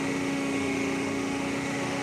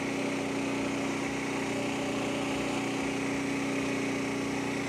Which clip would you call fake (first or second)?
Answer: first